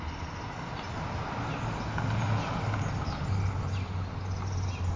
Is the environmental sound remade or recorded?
recorded